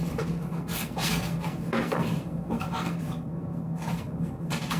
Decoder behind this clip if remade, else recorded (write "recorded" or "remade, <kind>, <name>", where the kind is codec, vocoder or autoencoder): remade, codec, SNAC